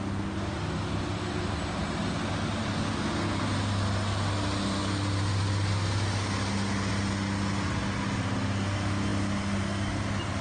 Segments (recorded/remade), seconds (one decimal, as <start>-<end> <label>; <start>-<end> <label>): 0.0-10.4 recorded